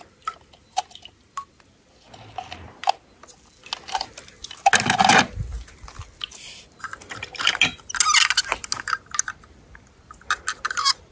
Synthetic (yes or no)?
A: no